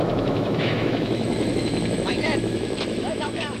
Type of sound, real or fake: fake